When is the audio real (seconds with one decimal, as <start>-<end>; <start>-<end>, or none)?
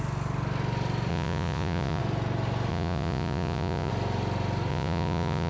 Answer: 0.0-1.1; 2.0-2.7; 3.9-4.7